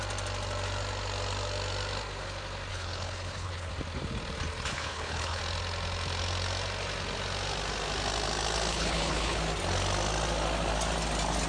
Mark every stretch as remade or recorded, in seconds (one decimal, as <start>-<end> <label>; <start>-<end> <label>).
0.0-2.7 recorded; 2.7-3.7 remade; 3.7-4.7 recorded; 4.7-5.4 remade; 5.4-8.7 recorded; 8.7-9.4 remade; 9.4-11.5 recorded